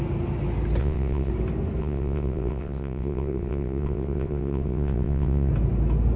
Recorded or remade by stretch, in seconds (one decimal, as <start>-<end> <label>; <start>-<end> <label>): 0.0-0.8 recorded; 0.8-1.3 remade; 1.3-1.8 recorded; 1.8-5.5 remade; 5.5-6.2 recorded